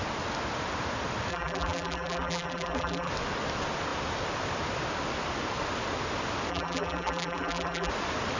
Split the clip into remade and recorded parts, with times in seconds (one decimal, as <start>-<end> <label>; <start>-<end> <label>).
0.0-1.3 recorded; 1.3-3.1 remade; 3.1-6.5 recorded; 6.5-7.9 remade; 7.9-8.4 recorded